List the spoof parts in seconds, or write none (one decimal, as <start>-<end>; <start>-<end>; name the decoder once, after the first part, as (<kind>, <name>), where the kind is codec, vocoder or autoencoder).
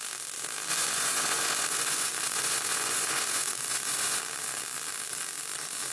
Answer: 0.7-4.2 (vocoder, Vocos)